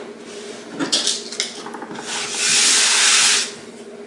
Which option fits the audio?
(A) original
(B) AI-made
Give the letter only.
A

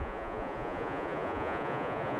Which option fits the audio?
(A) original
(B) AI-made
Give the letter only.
B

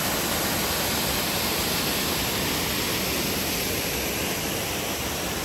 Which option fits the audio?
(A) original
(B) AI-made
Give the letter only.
A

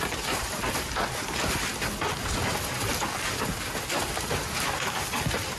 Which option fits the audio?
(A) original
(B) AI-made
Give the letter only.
A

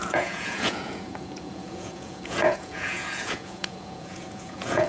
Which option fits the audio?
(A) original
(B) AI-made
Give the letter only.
B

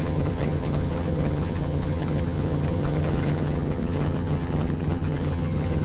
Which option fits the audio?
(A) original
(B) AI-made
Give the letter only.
B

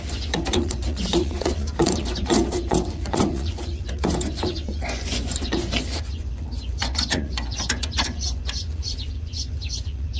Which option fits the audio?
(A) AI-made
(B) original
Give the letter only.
A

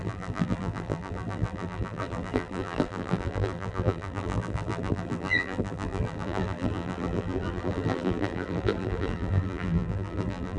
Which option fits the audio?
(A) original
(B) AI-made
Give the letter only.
B